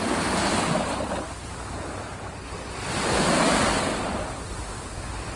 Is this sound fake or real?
real